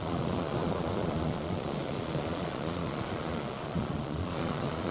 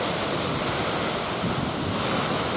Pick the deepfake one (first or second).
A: first